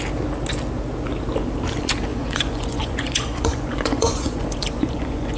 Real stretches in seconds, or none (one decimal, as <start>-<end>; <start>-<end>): 0.0-2.1